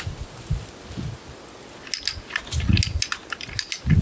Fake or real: real